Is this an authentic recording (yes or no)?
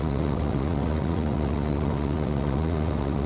no